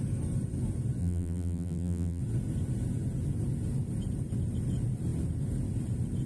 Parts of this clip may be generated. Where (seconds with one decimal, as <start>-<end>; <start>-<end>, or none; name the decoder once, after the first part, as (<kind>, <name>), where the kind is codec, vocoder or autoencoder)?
1.0-2.2 (vocoder, BigVGAN v2)